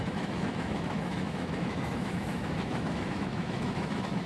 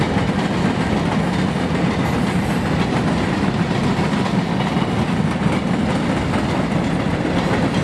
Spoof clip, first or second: first